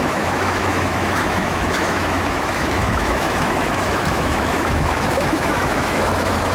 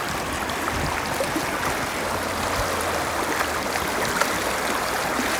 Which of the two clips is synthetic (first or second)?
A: first